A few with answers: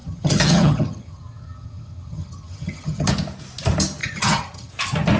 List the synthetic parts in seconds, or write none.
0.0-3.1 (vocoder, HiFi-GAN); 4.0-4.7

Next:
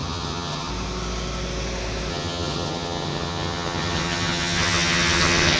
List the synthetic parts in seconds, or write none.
0.0-0.7 (vocoder, HiFi-GAN); 2.1-5.6

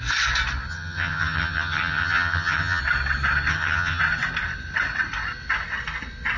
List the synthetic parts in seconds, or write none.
0.7-2.8 (vocoder, HiFi-GAN); 3.5-4.0

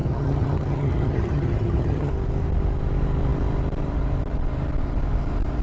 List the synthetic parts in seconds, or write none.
0.0-2.1 (vocoder, HiFi-GAN)

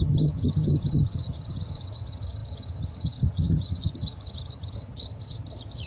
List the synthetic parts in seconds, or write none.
0.0-5.9 (vocoder, HiFi-GAN)

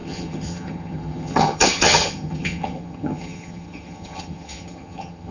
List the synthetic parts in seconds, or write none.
0.0-5.3 (vocoder, HiFi-GAN)

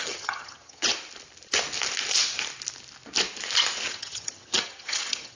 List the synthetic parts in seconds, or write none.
0.0-0.9 (vocoder, HiFi-GAN); 3.9-5.4